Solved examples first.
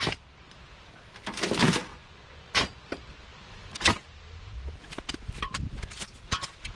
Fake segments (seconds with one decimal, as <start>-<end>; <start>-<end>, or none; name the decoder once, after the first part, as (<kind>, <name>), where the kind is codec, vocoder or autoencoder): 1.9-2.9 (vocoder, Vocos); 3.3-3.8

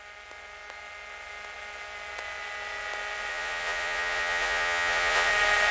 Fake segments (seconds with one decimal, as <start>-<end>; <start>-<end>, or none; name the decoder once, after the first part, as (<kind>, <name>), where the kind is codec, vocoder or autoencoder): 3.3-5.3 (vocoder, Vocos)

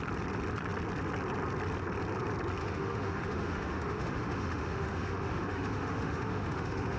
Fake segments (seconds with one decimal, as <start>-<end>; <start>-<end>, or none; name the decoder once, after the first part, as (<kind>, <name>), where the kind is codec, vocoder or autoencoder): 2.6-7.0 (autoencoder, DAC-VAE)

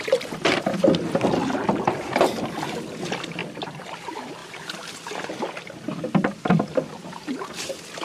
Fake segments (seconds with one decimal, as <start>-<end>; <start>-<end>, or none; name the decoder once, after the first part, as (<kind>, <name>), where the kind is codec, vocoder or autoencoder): none

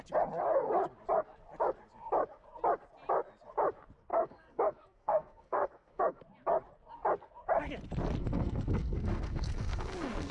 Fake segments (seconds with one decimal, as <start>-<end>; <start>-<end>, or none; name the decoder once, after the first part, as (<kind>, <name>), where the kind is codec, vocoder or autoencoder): 4.1-6.2 (codec, SNAC); 8.2-10.3